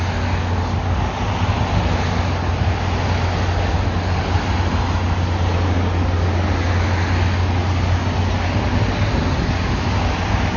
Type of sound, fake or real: real